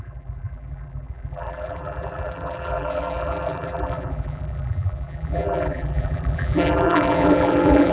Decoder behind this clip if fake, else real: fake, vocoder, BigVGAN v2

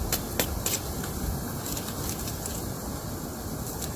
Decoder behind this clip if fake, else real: real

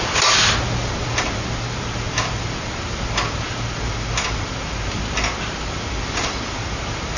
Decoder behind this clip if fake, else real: real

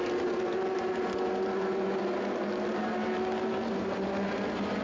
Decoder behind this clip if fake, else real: real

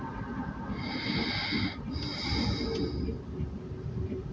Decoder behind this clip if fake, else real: real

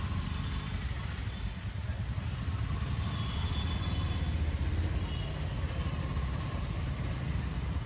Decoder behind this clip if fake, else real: real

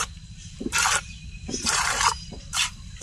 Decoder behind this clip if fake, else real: fake, vocoder, BigVGAN v2